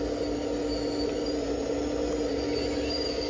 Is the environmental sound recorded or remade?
recorded